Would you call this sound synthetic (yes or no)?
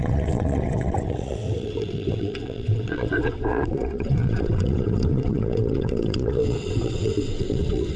yes